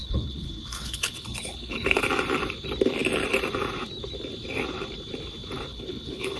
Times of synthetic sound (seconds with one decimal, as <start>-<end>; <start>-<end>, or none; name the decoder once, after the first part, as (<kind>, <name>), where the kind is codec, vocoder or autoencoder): 0.0-2.0 (codec, HILCodec); 5.7-6.4